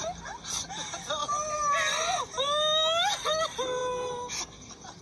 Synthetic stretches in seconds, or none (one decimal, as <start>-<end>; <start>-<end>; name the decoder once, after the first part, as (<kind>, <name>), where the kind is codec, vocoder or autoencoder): none